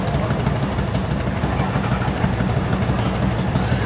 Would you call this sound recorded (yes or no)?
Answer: yes